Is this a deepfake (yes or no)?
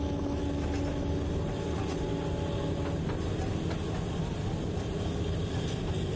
no